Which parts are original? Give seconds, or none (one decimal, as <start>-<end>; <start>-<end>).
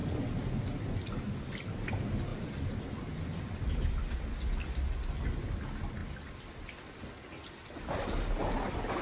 0.0-2.3; 2.8-9.0